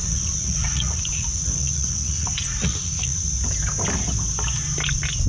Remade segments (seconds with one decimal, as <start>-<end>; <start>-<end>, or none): 0.0-3.2